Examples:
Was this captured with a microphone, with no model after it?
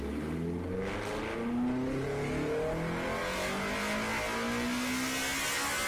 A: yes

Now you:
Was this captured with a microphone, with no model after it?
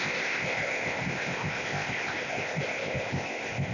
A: no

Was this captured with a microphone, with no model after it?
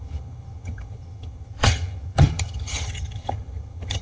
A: no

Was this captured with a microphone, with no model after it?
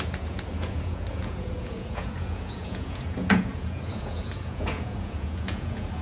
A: no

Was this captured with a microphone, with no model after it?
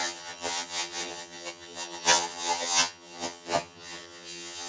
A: no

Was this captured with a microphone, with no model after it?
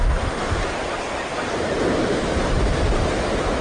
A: yes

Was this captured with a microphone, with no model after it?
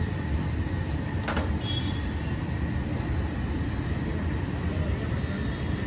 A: yes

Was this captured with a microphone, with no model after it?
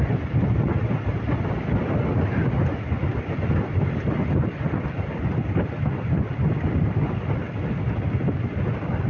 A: yes